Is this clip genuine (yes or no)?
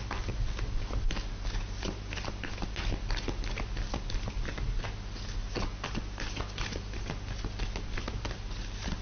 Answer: yes